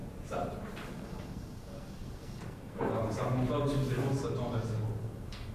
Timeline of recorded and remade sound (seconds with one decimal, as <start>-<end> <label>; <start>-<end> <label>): 0.0-0.9 recorded; 0.9-3.0 remade; 3.0-5.0 recorded; 5.0-5.5 remade

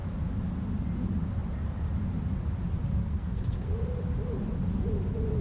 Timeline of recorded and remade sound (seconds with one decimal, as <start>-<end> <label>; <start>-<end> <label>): 0.0-3.0 recorded; 3.0-3.7 remade; 3.7-5.4 recorded

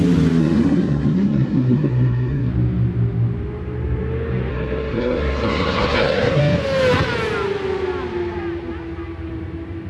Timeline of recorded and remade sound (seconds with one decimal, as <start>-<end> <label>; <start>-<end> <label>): 0.0-0.4 recorded; 0.4-2.5 remade; 2.5-4.5 recorded; 4.5-6.4 remade; 6.4-9.9 recorded